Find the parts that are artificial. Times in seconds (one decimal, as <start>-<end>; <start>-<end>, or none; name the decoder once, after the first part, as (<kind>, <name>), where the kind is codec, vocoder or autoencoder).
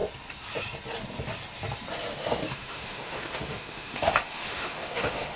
2.1-5.4 (autoencoder, DAC-VAE)